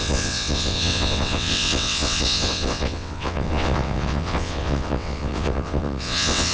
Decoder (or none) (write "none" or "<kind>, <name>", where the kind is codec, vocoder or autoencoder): vocoder, WaveNeXt